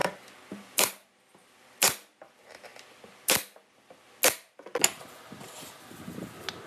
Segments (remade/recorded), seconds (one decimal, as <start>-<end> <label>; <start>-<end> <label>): 0.0-2.7 remade; 2.7-6.7 recorded